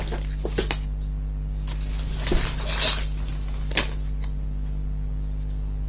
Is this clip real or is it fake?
real